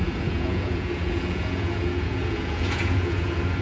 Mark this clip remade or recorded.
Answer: remade